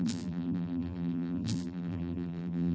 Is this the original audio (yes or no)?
no